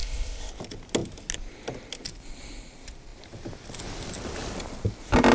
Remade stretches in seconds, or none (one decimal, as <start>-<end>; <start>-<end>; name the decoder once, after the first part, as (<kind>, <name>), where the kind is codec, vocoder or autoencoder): 0.0-0.5 (codec, ZipCodec)